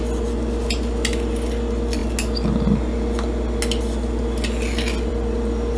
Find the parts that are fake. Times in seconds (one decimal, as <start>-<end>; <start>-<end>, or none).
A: none